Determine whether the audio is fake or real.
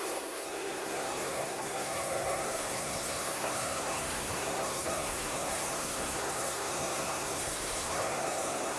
fake